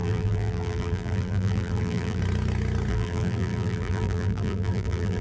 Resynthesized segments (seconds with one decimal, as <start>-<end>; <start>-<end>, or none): 0.0-2.2; 2.9-5.2